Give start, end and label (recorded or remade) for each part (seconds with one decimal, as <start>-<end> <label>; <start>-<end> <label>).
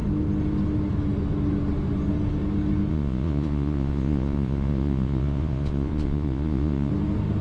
0.0-2.9 recorded; 2.9-6.9 remade; 6.9-7.4 recorded